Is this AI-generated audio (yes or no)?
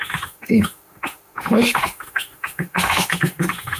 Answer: yes